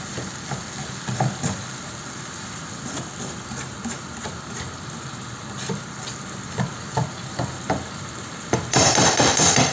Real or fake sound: fake